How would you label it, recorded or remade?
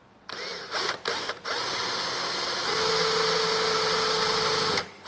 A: recorded